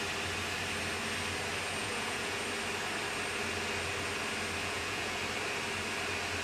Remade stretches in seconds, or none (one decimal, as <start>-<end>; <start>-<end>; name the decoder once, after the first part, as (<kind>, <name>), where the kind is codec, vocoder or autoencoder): 1.8-2.4 (vocoder, Vocos); 4.6-5.2